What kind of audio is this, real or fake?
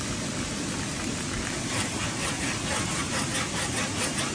real